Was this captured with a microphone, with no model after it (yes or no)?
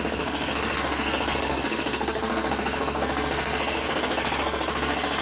no